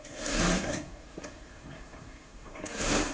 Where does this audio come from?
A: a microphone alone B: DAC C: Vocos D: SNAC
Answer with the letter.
D